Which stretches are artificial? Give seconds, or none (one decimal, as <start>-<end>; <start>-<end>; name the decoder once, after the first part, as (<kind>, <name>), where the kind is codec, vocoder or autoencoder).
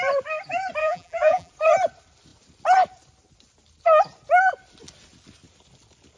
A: 0.8-1.5 (vocoder, BigVGAN v2)